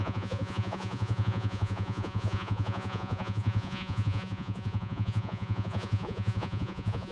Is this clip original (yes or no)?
no